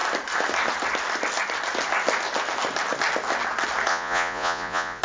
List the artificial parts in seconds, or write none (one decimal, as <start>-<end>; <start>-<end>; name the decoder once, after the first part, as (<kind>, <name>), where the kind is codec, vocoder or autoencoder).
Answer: 3.9-5.0 (vocoder, Vocos)